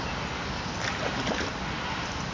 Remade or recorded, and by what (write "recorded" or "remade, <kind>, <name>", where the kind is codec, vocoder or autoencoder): recorded